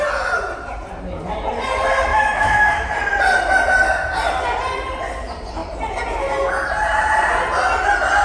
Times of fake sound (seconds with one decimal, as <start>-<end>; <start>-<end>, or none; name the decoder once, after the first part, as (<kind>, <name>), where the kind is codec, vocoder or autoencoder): 2.1-2.9 (autoencoder, DAC-VAE)